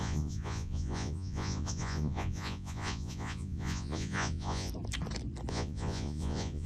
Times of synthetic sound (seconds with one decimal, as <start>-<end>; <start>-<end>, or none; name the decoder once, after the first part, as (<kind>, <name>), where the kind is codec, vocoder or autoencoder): 0.0-4.7 (vocoder, Vocos); 5.5-6.7